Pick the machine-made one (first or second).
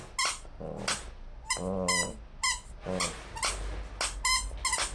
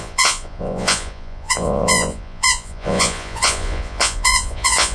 second